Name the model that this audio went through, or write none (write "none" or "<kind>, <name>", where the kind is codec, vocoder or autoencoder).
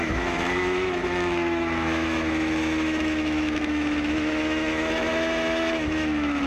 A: autoencoder, DAC-VAE